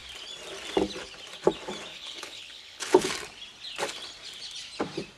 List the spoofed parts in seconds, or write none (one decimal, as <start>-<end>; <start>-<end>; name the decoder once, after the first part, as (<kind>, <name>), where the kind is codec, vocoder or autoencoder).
1.9-3.1 (codec, HILCodec)